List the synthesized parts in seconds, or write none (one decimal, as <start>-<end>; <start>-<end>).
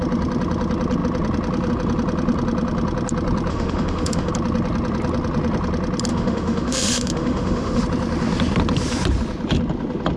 3.5-4.3; 6.1-7.8